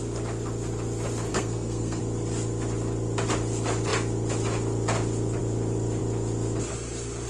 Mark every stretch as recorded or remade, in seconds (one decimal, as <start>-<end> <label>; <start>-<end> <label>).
0.0-1.3 recorded; 1.3-2.0 remade; 2.0-7.3 recorded